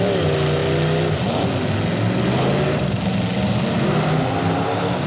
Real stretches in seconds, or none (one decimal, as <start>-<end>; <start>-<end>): 0.0-5.1